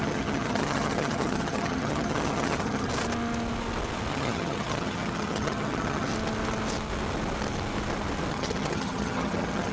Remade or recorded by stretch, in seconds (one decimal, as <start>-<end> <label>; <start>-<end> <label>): 0.0-2.9 remade; 2.9-4.1 recorded; 4.1-6.1 remade; 6.1-8.3 recorded; 8.3-9.7 remade